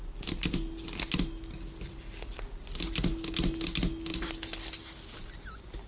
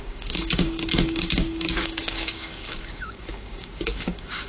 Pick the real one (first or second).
first